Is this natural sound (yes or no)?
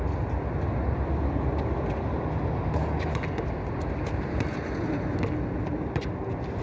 yes